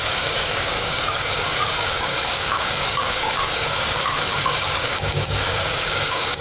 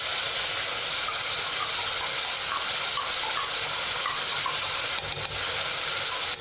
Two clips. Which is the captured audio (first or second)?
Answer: second